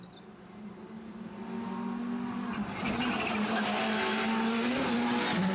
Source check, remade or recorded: recorded